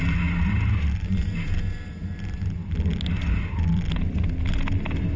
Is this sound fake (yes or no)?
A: no